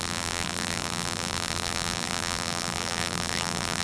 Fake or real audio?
fake